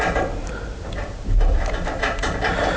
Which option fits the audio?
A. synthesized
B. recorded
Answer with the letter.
B